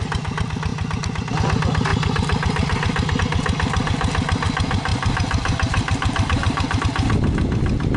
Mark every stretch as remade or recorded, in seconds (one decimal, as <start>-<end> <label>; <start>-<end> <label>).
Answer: 0.0-4.9 recorded; 4.9-6.8 remade; 6.8-8.0 recorded